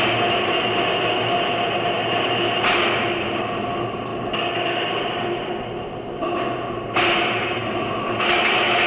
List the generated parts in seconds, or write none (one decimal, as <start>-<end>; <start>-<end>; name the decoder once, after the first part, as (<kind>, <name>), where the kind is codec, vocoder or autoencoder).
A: none